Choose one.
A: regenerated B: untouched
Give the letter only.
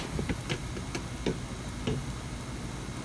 B